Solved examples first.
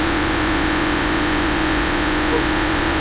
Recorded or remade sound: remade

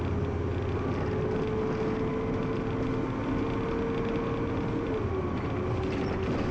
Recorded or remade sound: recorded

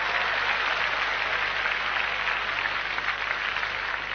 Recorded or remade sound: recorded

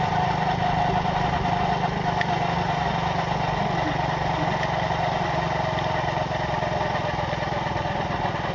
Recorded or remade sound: recorded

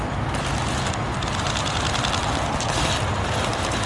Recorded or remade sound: recorded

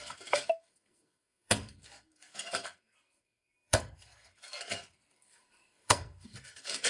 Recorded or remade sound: remade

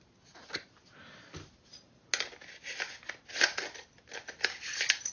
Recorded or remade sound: recorded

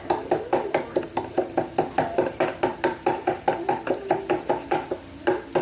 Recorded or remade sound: recorded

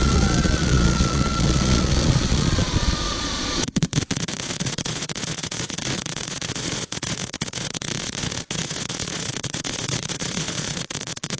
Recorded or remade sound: remade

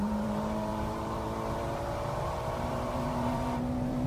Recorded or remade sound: remade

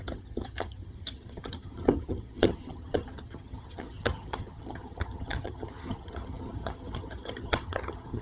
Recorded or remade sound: remade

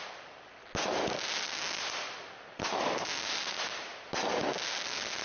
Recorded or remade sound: recorded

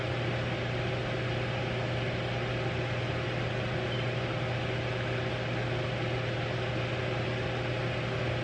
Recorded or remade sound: recorded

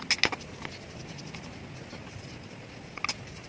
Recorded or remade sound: recorded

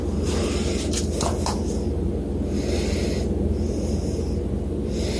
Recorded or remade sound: recorded